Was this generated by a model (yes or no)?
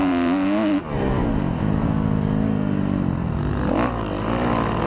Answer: no